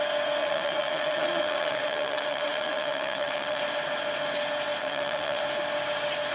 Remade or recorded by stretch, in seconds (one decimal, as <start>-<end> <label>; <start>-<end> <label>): 0.0-0.4 recorded; 0.4-3.6 remade; 3.6-4.8 recorded; 4.8-5.4 remade; 5.4-6.3 recorded

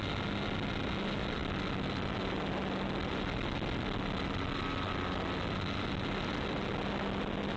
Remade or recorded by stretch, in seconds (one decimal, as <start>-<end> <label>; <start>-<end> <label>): 0.0-7.6 recorded

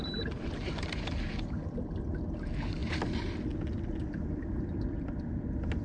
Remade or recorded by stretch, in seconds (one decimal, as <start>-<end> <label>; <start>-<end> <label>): 0.0-5.8 recorded

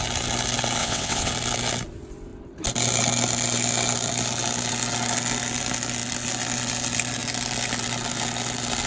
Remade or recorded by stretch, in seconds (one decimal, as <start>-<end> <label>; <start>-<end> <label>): 0.0-0.8 recorded; 0.8-1.3 remade; 1.3-8.9 recorded

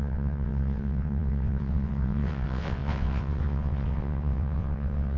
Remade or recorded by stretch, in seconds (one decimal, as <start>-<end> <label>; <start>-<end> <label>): 0.0-5.2 remade